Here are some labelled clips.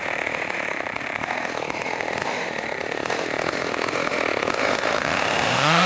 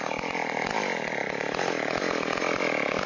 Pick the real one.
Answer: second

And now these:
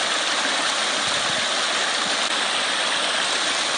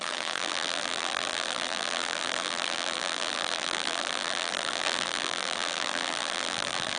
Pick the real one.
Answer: first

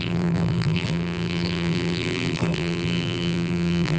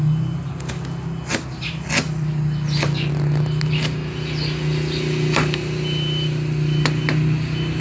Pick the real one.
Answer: second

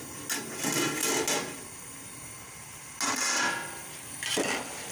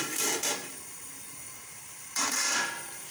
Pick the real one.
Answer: first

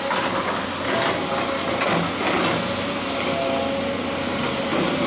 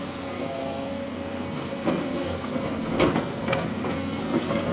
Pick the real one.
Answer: first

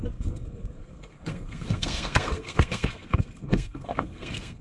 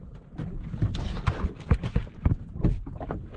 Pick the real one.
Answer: second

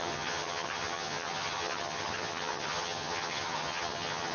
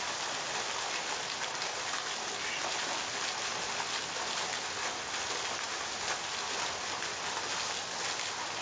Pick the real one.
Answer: second